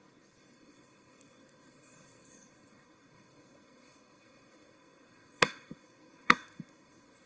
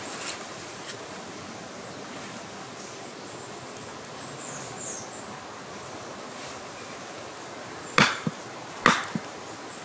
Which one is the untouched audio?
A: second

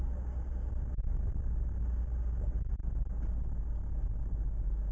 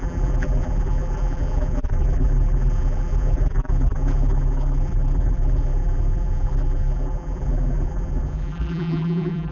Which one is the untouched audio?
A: first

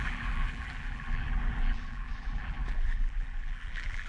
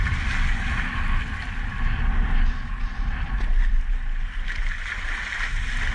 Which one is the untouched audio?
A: second